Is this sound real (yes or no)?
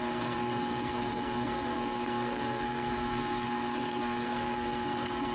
no